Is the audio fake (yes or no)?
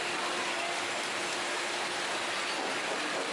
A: no